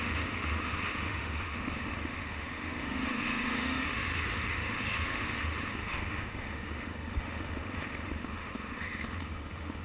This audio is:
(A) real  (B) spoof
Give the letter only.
B